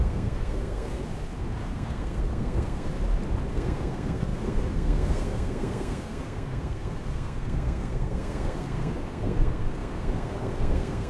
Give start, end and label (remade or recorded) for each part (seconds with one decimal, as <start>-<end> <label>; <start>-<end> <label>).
0.0-1.0 remade; 1.0-1.6 recorded; 1.6-2.9 remade; 2.9-3.5 recorded; 3.5-11.1 remade